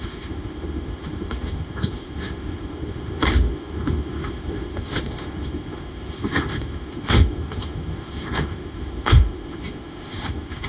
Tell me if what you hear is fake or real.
fake